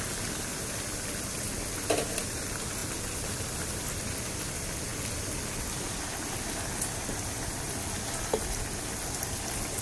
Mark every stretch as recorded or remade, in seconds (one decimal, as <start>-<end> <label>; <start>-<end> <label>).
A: 0.0-2.8 recorded; 2.8-3.8 remade; 3.8-9.8 recorded